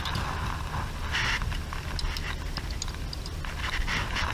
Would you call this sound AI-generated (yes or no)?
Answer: no